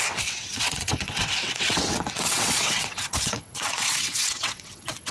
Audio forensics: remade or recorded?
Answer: remade